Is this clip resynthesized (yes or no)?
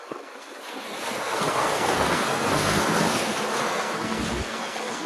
yes